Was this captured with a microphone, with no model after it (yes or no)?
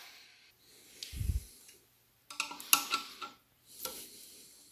yes